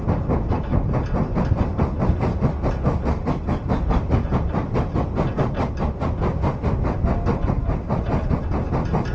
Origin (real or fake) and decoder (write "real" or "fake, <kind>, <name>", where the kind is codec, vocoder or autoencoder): real